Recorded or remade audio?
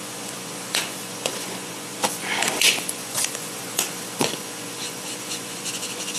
remade